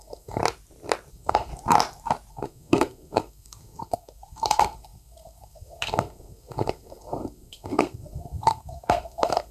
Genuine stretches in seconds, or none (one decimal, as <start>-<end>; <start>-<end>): 0.4-1.1; 1.5-2.3